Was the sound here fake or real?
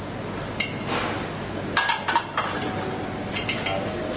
real